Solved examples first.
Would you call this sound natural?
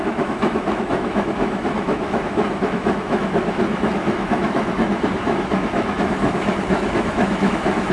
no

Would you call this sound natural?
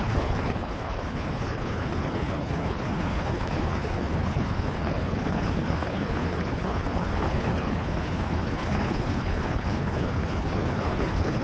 no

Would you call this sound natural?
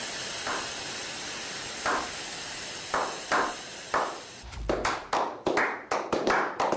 no